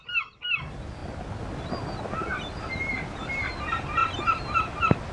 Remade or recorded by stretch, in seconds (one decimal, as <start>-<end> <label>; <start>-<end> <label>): 0.0-5.1 recorded